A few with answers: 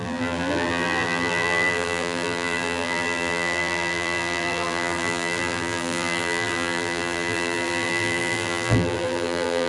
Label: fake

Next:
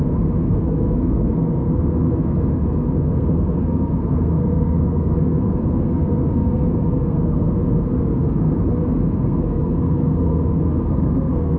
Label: fake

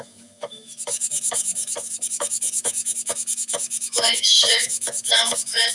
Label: fake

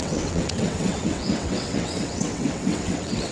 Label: fake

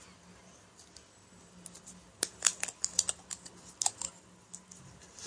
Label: real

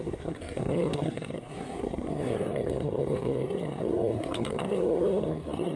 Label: fake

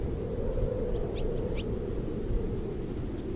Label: real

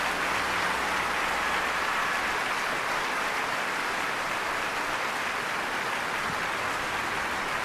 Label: real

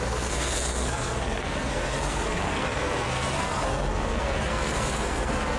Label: fake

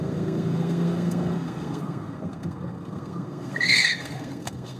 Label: fake